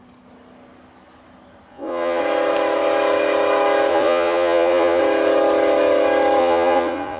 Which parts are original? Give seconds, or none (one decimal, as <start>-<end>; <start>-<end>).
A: 0.0-1.7; 2.2-3.9; 5.0-6.4